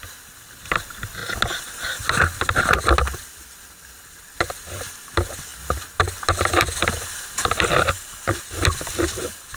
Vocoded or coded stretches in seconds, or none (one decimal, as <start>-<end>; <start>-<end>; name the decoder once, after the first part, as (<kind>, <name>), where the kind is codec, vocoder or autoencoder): none